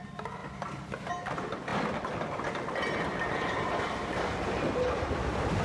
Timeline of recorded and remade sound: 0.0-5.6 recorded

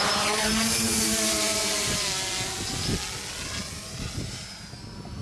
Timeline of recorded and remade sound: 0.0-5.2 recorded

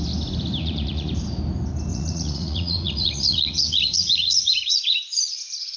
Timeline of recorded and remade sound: 0.0-0.6 recorded; 0.6-1.1 remade; 1.1-1.9 recorded; 1.9-5.8 remade

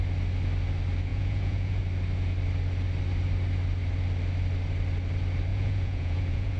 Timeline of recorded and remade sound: 0.0-1.1 recorded; 1.1-1.8 remade; 1.8-5.5 recorded; 5.5-6.6 remade

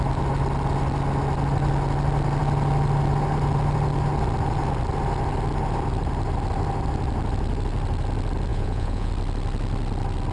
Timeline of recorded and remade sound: 0.0-8.5 recorded; 8.5-9.1 remade; 9.1-10.3 recorded

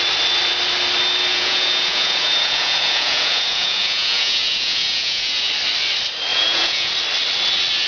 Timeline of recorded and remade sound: 0.0-1.3 recorded; 1.3-5.5 remade; 5.5-6.3 recorded; 6.3-6.9 remade; 6.9-7.9 recorded

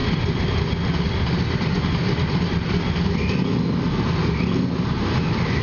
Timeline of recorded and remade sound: 0.0-5.6 recorded